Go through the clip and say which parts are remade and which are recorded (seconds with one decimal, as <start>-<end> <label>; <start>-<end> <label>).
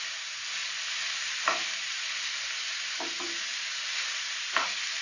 0.0-5.0 recorded